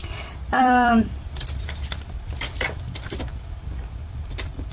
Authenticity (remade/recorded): remade